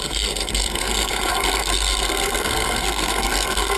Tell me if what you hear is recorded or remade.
remade